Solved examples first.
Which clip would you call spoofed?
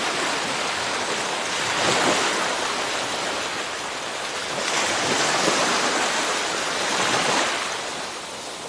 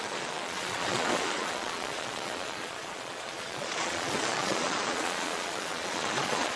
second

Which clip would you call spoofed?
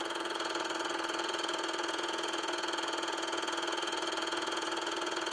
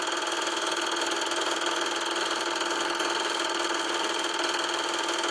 first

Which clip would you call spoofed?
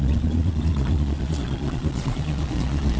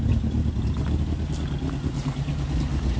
first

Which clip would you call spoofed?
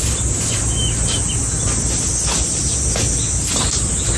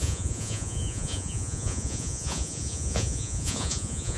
second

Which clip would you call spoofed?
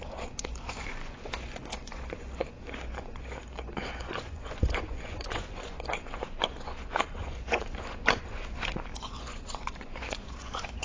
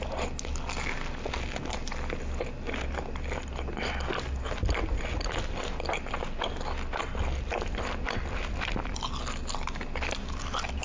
first